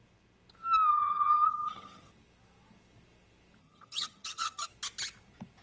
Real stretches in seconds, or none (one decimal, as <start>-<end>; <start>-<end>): 0.0-0.9; 2.1-3.6; 4.7-5.6